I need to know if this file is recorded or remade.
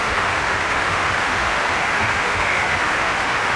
remade